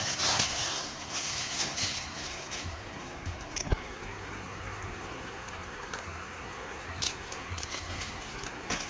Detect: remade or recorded remade